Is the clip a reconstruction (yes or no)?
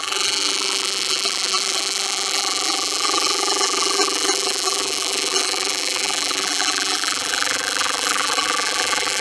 yes